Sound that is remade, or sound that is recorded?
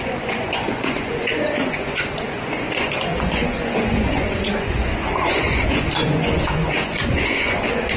remade